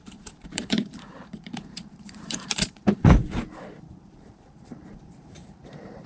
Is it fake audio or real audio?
fake